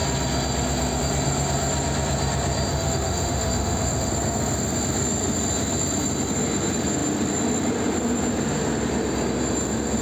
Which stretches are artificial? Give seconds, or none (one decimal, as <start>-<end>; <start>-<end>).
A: 2.7-4.1